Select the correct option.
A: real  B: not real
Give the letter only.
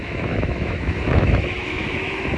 B